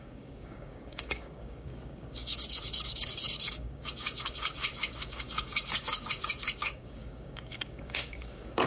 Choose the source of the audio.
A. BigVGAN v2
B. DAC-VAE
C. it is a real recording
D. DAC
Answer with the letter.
D